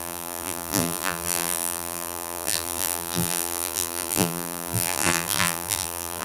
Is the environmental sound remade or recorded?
remade